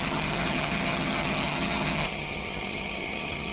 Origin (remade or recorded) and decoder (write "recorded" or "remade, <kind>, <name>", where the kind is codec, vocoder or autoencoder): remade, vocoder, HiFi-GAN